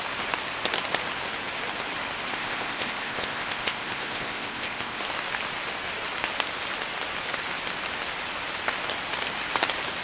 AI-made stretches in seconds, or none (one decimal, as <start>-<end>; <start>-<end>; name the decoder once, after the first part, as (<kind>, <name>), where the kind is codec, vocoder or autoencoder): 2.3-5.0 (codec, ZipCodec)